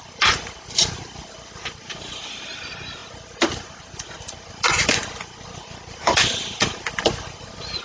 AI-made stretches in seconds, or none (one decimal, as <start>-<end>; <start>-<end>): 0.0-7.8